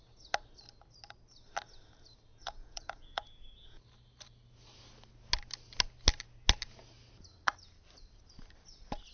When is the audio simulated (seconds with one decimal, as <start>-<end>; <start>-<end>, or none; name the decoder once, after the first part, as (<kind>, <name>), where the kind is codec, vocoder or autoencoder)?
2.3-3.8 (vocoder, Vocos)